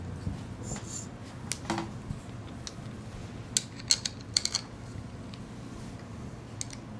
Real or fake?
real